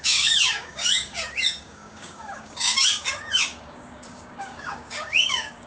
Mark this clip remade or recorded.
remade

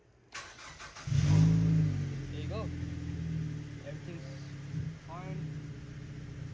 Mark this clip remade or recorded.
recorded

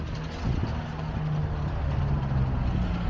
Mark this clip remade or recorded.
recorded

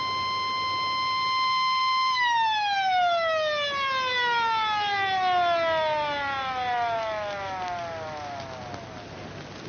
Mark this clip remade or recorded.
recorded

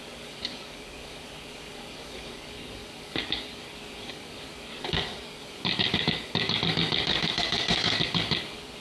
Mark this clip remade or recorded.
remade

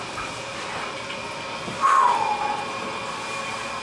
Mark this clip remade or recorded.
recorded